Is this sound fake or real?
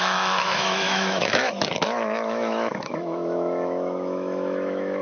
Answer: fake